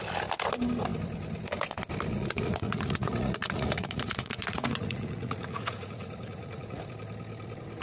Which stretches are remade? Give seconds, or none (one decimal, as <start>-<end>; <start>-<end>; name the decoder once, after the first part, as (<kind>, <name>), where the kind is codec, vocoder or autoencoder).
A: 2.1-6.8 (vocoder, Vocos)